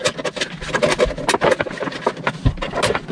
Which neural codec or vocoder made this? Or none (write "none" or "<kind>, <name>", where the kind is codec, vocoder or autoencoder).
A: none